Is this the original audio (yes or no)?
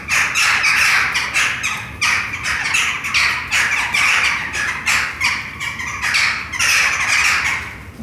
yes